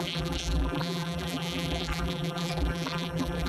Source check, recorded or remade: remade